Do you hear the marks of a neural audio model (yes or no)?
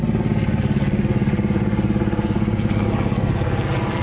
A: no